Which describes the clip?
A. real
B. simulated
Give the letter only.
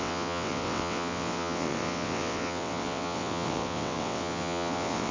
B